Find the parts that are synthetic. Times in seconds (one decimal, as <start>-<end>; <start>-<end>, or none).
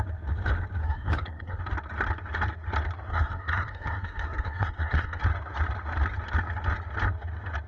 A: 0.8-1.6; 3.1-5.2